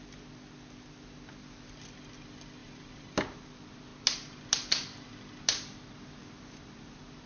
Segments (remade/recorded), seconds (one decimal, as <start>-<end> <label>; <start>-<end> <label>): 0.0-2.6 recorded; 2.6-3.5 remade; 3.5-6.2 recorded; 6.2-7.3 remade

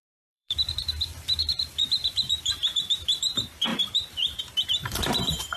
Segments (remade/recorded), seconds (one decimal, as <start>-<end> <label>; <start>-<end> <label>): 0.0-5.6 remade

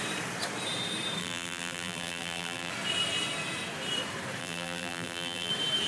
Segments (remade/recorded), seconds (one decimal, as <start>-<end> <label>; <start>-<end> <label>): 0.0-1.2 recorded; 1.2-2.7 remade; 2.7-4.4 recorded; 4.4-5.5 remade; 5.5-5.9 recorded

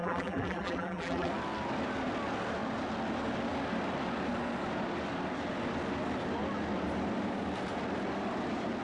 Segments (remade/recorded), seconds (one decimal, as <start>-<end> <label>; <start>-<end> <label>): 0.0-1.3 remade; 1.3-8.8 recorded

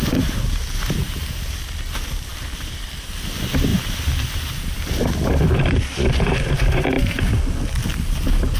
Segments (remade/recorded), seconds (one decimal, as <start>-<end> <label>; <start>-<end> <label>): 0.0-2.3 recorded; 2.3-3.0 remade; 3.0-3.7 recorded; 3.7-7.2 remade; 7.2-8.6 recorded